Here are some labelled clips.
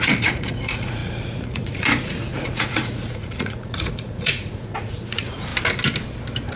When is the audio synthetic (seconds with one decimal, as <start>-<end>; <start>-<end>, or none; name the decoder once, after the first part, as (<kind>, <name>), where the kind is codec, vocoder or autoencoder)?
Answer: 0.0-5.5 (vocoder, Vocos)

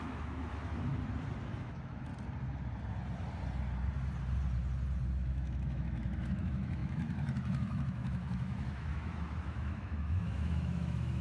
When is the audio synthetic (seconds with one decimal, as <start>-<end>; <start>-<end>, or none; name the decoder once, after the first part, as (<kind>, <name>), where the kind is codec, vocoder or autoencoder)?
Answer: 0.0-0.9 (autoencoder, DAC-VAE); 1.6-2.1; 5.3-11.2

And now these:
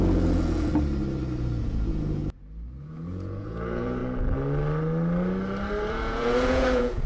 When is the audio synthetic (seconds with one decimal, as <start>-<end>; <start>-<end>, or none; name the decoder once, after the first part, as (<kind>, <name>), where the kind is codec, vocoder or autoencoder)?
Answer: 0.0-0.7 (vocoder, Vocos); 1.6-2.2; 2.8-4.0; 5.9-7.1